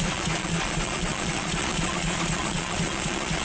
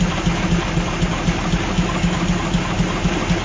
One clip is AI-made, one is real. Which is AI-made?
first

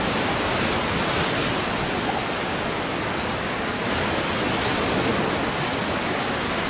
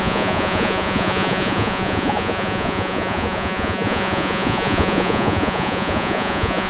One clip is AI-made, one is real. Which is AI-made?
second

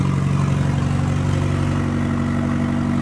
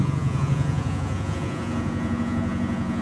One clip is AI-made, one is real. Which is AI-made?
second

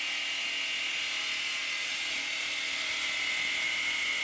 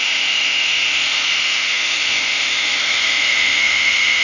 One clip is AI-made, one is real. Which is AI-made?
second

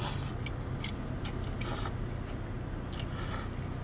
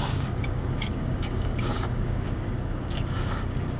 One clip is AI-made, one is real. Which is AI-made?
second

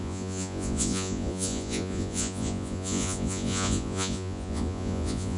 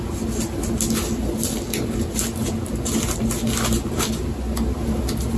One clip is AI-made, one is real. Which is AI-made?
first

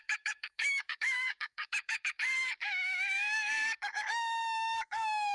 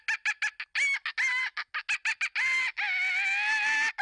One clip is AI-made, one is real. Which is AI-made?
first